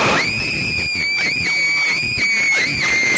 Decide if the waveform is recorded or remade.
recorded